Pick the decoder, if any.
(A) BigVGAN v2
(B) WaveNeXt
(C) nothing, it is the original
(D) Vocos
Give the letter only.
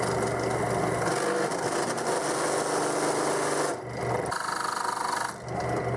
C